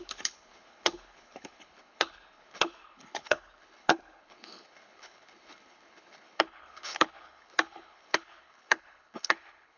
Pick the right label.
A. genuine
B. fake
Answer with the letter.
B